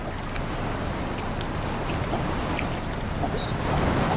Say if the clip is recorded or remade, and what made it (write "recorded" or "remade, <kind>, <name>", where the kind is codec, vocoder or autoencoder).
recorded